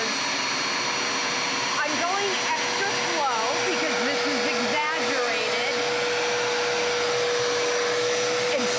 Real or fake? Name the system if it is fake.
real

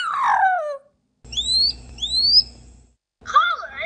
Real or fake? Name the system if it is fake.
real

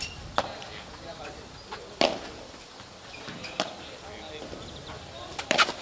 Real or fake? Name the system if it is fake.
real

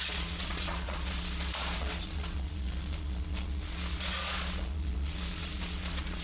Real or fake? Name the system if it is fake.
fake, vocoder, Vocos